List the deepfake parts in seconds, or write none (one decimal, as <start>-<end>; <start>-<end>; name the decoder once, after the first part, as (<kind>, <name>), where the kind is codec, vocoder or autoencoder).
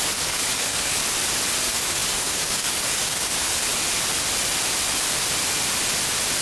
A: 0.0-1.0 (codec, DAC); 1.6-3.7